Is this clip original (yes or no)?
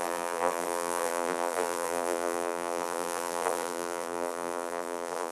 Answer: no